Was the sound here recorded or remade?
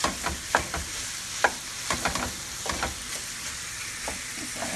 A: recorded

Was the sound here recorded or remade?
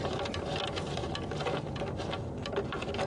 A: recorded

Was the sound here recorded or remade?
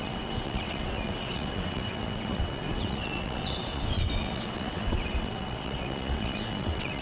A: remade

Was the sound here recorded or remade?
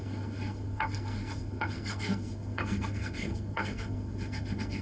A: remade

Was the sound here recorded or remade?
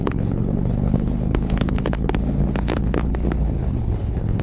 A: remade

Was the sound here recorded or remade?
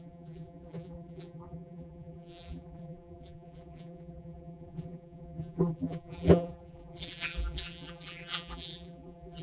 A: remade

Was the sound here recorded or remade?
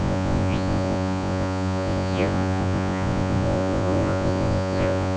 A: remade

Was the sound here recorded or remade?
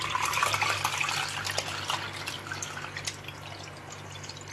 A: recorded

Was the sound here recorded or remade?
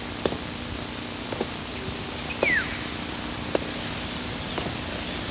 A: recorded